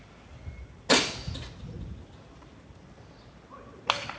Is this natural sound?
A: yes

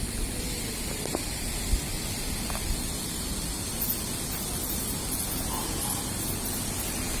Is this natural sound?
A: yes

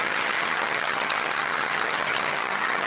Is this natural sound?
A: no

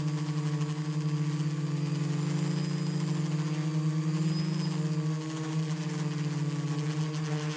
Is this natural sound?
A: yes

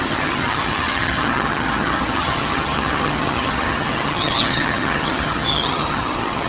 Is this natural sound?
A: no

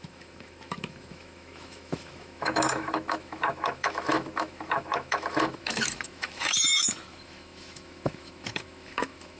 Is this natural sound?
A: no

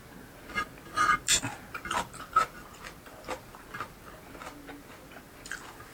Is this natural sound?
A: yes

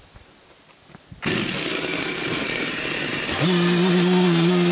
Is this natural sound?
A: yes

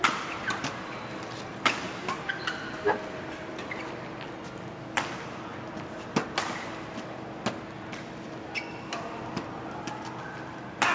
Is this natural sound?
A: yes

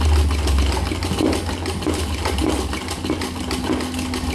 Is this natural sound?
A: yes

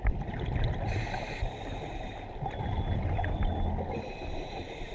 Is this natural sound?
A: yes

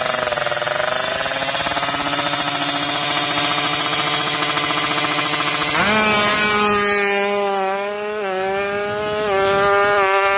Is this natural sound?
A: yes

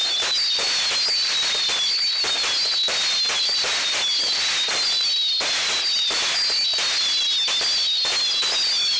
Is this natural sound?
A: yes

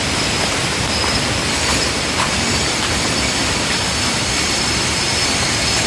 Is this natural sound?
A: yes